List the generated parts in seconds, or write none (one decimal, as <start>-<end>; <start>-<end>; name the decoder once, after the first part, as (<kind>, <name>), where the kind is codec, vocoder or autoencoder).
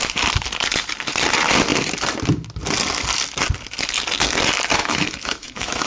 4.8-5.9 (autoencoder, DAC-VAE)